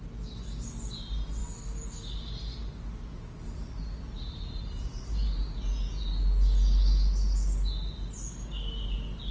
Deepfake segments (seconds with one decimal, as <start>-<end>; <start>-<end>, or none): none